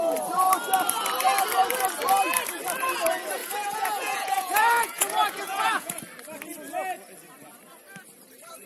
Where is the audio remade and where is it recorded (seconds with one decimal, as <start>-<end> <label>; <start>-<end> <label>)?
0.0-3.4 recorded; 3.4-6.0 remade; 6.0-8.7 recorded